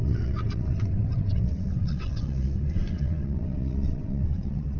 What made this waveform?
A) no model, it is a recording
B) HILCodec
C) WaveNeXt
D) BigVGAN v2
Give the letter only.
C